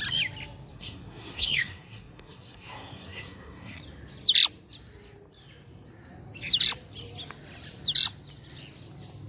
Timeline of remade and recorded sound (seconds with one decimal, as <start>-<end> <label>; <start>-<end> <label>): 0.0-0.7 recorded; 0.7-3.8 remade; 3.8-9.3 recorded